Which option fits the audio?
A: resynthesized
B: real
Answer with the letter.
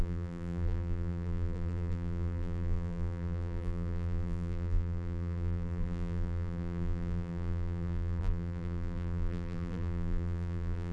A